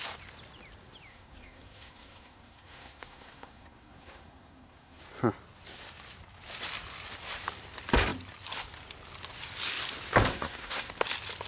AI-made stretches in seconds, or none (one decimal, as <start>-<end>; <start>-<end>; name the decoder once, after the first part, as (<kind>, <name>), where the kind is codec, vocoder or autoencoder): 1.1-5.0 (codec, SNAC); 10.3-10.9